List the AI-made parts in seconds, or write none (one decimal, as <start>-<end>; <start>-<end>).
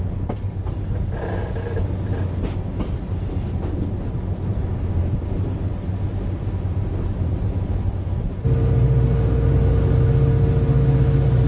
none